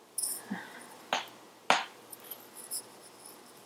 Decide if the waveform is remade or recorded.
recorded